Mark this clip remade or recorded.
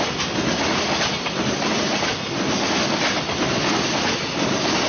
recorded